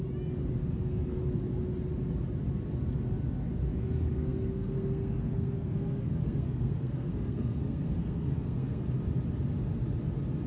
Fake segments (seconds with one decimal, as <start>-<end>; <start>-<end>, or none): 0.6-1.2; 3.7-8.8